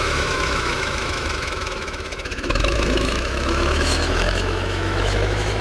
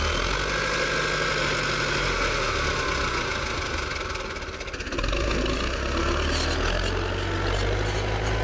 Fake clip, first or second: first